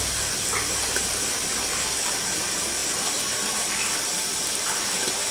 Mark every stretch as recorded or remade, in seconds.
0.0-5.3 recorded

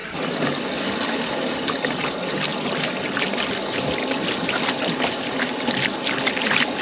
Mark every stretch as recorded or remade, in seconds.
0.0-6.8 recorded

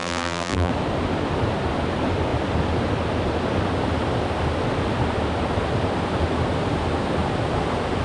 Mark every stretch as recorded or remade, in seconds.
0.0-0.7 remade; 0.7-8.0 recorded

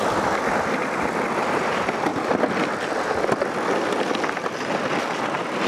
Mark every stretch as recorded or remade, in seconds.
0.0-5.7 recorded

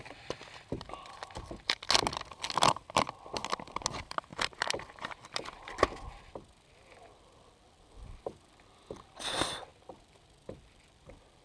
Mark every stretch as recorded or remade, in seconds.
0.0-4.3 recorded; 4.3-6.2 remade; 6.2-9.7 recorded; 9.7-11.4 remade